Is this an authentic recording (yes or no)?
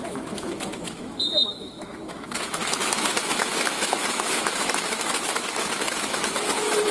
no